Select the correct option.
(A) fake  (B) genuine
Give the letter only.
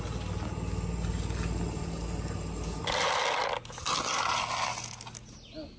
B